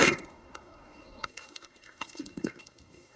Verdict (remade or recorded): remade